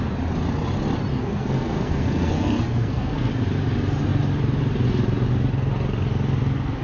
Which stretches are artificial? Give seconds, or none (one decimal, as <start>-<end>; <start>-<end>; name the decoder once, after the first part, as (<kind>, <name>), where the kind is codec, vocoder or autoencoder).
1.1-3.3 (codec, SNAC)